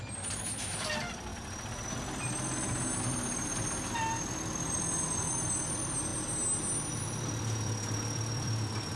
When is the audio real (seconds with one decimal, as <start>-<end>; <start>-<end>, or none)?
6.1-6.9